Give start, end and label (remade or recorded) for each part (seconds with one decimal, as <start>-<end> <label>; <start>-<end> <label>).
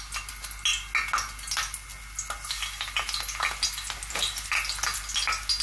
0.0-5.6 recorded